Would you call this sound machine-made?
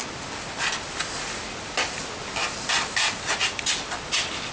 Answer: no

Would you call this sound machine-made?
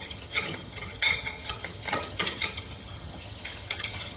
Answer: yes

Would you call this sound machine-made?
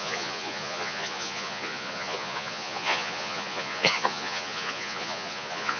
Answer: yes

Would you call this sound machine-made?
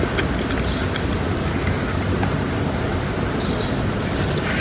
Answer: no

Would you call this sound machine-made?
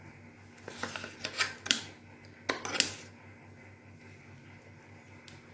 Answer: no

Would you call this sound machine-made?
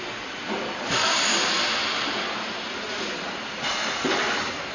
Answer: yes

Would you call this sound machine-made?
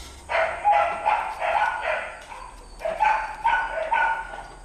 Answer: no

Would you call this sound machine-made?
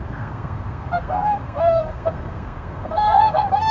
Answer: yes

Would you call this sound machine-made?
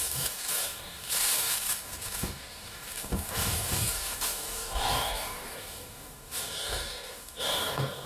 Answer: yes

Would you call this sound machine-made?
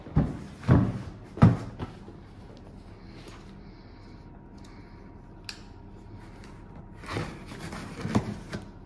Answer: no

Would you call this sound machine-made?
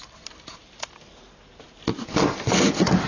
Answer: no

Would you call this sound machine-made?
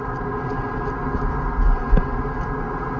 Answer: no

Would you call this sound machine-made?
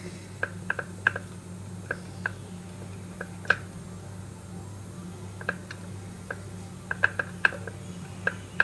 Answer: no